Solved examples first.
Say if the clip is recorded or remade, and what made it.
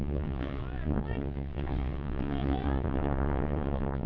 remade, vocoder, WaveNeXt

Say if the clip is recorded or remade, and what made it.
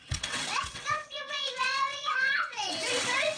remade, vocoder, WaveNeXt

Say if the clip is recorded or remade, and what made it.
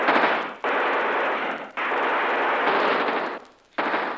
recorded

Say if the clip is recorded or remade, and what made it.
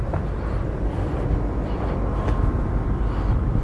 recorded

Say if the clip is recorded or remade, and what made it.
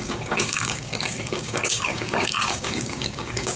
remade, codec, DAC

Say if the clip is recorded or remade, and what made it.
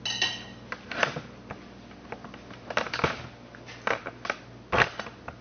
recorded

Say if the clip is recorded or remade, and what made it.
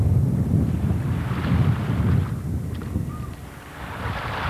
recorded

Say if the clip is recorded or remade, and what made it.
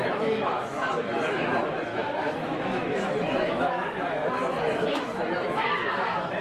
remade, autoencoder, DAC-VAE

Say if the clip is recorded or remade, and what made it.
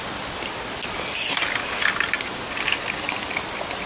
recorded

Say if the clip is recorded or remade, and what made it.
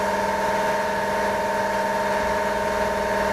recorded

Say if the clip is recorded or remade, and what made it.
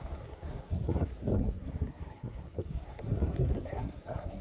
remade, codec, SNAC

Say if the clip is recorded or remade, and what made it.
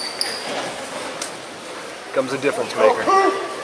recorded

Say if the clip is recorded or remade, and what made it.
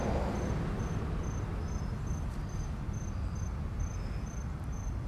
recorded